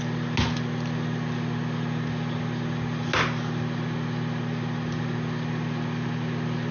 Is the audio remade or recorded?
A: recorded